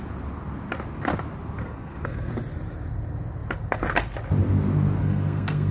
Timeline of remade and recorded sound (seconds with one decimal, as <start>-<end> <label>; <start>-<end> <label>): 0.0-1.6 recorded; 1.6-2.3 remade; 2.3-5.0 recorded; 5.0-5.7 remade